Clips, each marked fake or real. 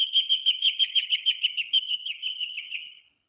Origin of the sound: fake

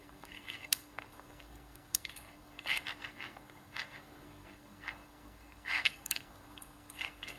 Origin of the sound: fake